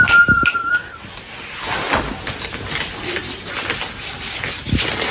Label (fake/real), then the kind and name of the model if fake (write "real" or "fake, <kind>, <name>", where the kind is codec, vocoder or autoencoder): real